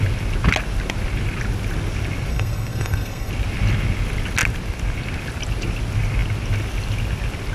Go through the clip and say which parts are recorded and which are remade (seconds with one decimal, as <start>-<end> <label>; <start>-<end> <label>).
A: 0.0-2.3 recorded; 2.3-3.3 remade; 3.3-7.5 recorded